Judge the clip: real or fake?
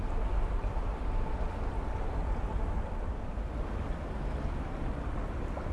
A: real